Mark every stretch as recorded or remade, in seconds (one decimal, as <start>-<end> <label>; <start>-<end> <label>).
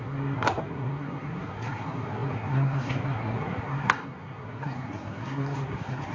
0.0-6.1 remade